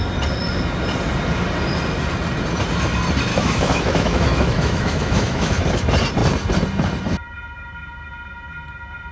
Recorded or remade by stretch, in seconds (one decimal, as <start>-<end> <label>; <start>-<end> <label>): 0.0-3.3 recorded; 3.3-5.6 remade; 5.6-9.1 recorded